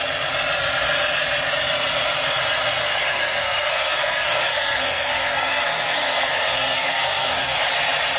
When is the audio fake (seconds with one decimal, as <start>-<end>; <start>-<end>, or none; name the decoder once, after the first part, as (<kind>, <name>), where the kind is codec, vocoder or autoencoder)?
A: 2.8-7.6 (codec, SNAC)